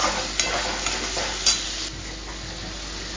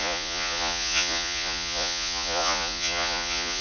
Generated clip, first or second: second